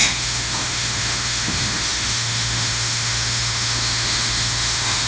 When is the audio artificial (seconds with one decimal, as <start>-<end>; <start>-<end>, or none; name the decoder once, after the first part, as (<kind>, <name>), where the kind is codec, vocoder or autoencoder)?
0.0-5.1 (autoencoder, DAC-VAE)